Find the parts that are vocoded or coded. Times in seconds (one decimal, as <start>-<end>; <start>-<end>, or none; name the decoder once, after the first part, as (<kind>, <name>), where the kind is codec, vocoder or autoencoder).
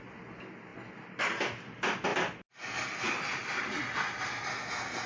none